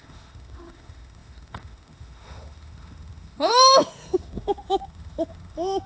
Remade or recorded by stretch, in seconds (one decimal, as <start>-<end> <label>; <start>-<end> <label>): 0.0-5.9 remade